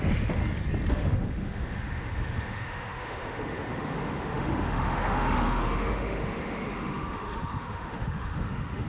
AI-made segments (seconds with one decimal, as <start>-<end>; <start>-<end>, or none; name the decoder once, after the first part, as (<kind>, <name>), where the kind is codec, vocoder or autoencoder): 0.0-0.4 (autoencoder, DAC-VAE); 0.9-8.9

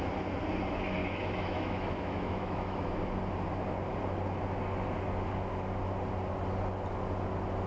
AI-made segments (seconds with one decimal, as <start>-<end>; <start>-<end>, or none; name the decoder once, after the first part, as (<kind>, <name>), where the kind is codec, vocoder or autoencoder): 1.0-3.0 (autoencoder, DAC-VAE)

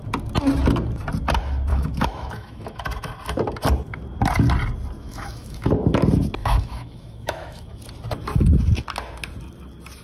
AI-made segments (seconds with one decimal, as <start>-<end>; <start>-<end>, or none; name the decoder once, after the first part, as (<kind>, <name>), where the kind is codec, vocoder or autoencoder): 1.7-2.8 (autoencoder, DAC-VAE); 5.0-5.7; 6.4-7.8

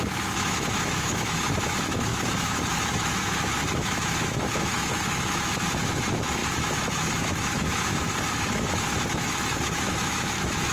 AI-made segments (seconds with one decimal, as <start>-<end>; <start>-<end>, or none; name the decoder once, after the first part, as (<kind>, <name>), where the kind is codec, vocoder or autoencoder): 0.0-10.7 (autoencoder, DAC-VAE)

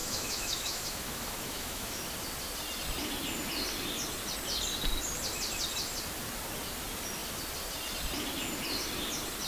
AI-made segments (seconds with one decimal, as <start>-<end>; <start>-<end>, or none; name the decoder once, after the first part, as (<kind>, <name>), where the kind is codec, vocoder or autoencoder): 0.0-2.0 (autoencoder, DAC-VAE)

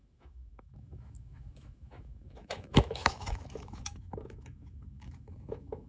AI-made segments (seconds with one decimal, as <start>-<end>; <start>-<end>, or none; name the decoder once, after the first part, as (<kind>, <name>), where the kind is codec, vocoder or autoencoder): 0.0-5.9 (autoencoder, DAC-VAE)

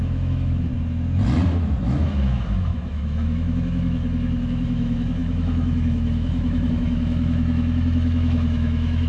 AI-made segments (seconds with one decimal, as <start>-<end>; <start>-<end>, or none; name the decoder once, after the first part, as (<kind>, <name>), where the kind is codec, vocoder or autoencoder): 0.0-0.7 (autoencoder, DAC-VAE); 1.8-9.1

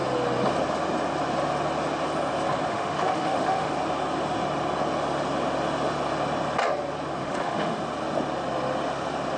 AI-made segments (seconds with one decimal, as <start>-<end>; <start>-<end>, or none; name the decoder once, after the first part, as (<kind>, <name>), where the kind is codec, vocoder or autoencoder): 2.7-3.7 (autoencoder, DAC-VAE); 7.2-7.8